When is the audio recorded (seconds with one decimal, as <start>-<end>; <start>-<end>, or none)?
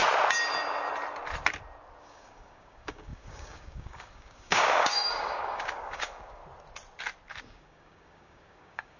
0.0-2.0; 6.4-7.4